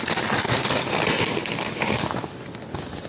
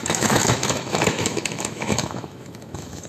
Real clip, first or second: first